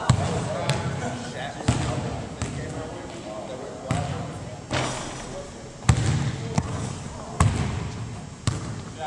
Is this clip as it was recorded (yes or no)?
yes